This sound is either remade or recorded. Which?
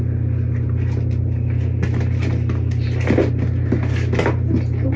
recorded